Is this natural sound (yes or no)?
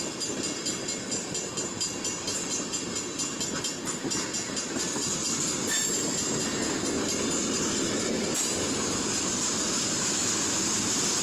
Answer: yes